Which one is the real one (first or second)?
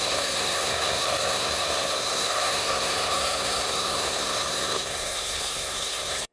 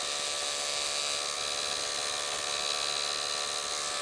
second